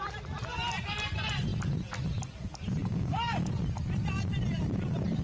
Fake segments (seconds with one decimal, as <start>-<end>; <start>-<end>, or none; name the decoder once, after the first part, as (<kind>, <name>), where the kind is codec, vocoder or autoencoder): 2.8-3.5 (codec, DAC)